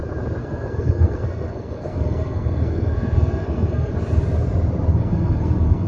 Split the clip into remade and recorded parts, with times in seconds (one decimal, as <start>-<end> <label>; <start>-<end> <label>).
0.0-0.4 recorded; 0.4-3.9 remade; 3.9-4.9 recorded; 4.9-5.9 remade